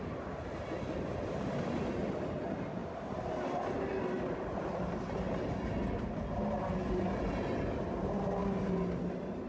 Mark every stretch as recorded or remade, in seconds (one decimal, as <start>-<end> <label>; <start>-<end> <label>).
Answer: 0.0-9.5 recorded